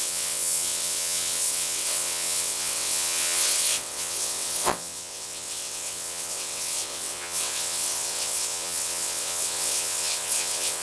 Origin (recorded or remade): remade